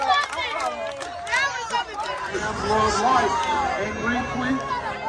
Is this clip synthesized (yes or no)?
no